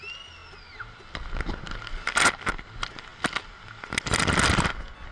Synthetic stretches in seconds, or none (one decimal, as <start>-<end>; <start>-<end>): none